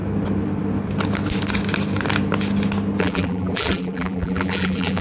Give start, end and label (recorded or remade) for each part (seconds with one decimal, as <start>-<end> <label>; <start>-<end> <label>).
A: 0.0-3.0 recorded; 3.0-5.0 remade